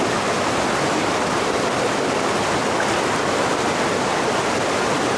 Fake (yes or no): no